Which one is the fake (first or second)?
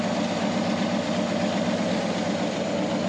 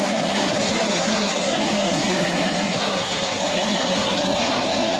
second